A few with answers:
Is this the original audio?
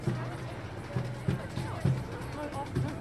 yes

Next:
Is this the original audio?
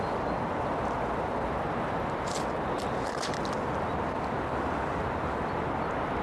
yes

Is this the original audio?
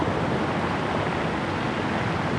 yes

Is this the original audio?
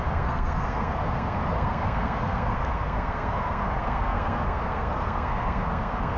no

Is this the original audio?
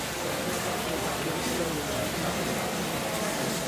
yes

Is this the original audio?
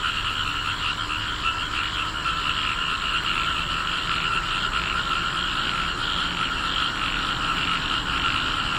yes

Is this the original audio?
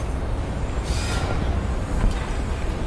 yes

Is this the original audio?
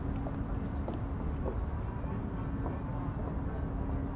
yes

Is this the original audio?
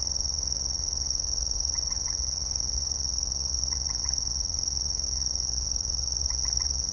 no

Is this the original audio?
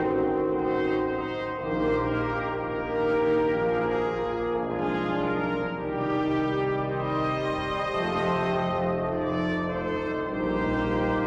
yes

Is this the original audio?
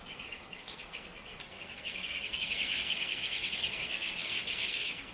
no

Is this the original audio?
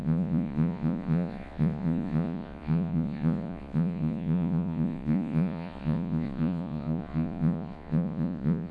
no